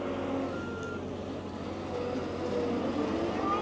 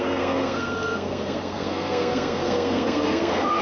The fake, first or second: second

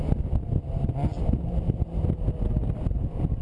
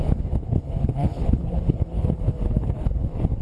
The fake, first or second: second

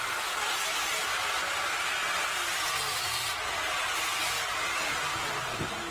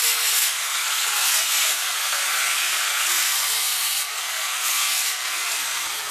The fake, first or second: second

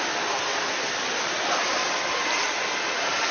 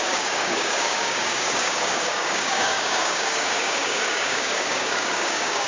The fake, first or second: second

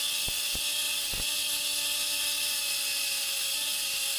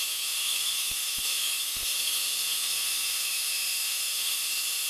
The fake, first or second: second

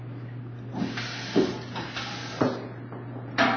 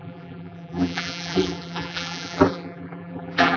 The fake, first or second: second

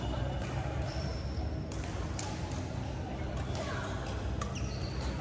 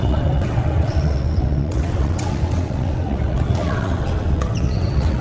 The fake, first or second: second